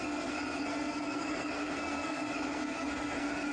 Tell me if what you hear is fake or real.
fake